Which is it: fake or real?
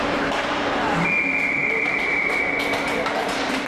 fake